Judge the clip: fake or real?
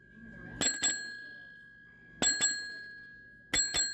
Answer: real